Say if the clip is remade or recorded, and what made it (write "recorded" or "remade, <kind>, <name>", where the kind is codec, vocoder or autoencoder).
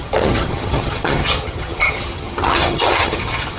remade, vocoder, HiFi-GAN